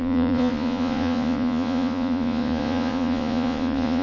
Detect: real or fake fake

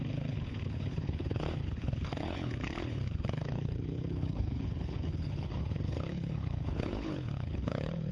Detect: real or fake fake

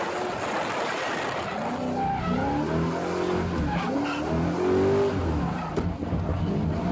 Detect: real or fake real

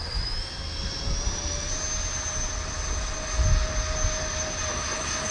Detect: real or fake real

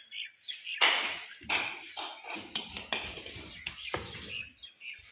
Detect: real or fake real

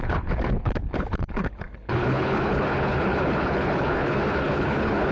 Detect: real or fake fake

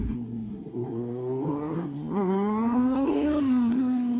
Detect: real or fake fake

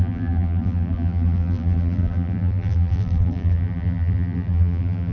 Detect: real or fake fake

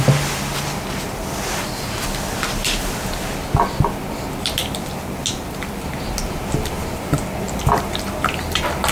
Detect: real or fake real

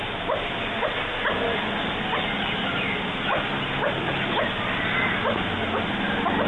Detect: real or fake real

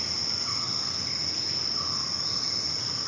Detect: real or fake real